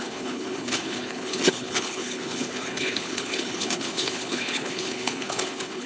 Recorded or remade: remade